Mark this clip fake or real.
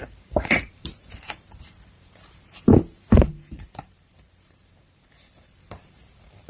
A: fake